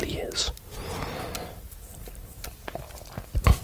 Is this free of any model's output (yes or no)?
yes